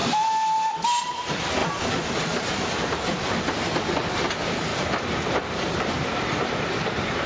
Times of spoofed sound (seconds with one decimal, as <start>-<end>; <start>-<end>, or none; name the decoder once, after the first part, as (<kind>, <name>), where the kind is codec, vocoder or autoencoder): 1.0-4.7 (vocoder, BigVGAN v2); 5.3-7.3